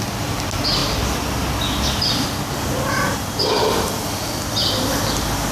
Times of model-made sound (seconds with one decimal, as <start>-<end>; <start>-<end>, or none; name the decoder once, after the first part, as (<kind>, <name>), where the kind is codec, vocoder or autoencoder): none